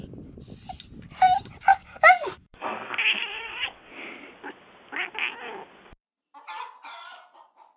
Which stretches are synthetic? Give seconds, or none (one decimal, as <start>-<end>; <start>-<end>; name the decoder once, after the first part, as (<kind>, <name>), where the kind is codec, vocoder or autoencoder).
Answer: 1.7-2.6 (codec, DAC); 3.3-3.9